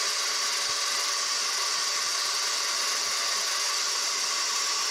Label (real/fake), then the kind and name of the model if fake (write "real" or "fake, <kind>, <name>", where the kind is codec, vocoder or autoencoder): real